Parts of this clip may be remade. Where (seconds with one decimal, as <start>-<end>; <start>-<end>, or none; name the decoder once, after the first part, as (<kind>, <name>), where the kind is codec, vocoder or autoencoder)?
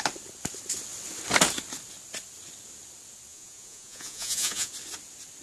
3.3-4.7 (vocoder, Vocos)